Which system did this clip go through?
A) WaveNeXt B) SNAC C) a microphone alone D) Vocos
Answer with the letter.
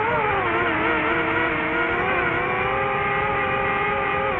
C